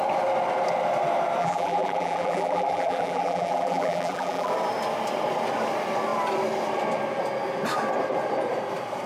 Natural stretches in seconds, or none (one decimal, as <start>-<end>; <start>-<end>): 0.0-1.4; 4.5-9.1